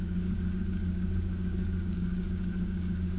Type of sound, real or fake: fake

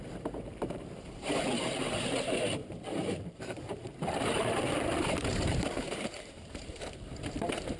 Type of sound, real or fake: fake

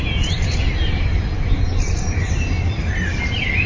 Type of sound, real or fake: real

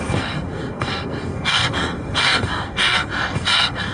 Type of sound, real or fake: fake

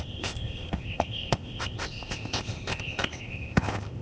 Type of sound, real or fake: fake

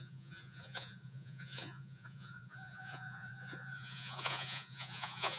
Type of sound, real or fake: fake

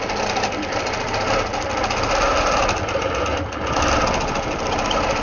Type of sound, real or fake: real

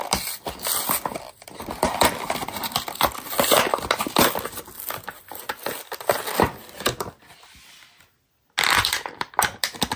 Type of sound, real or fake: real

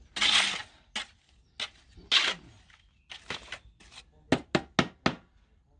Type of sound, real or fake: real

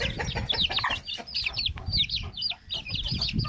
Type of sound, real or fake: real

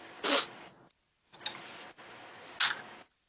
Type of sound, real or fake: real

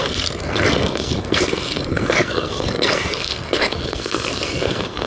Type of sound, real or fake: fake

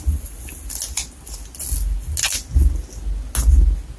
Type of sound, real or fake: real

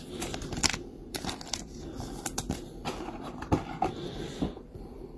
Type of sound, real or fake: fake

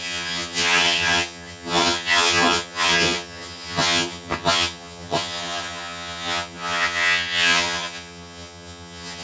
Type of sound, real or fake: fake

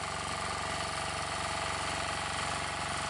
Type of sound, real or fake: real